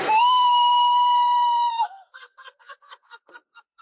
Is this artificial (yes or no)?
yes